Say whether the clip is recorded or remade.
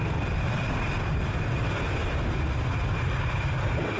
recorded